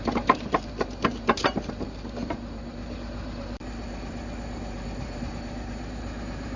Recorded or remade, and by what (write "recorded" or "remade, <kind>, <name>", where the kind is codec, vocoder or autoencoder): remade, vocoder, BigVGAN v2